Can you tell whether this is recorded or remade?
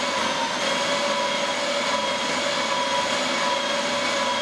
recorded